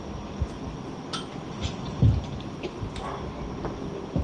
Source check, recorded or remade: recorded